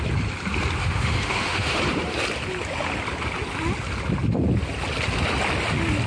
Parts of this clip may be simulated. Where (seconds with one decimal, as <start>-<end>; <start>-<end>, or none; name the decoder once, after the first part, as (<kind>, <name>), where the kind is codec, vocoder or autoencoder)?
0.8-1.8 (autoencoder, DAC-VAE)